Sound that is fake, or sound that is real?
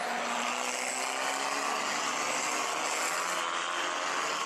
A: real